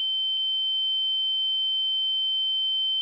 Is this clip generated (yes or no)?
no